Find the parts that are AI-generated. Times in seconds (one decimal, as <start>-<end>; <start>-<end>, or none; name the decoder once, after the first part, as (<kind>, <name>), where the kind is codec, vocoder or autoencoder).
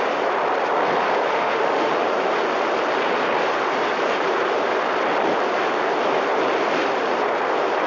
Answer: 1.3-1.9 (autoencoder, DAC-VAE)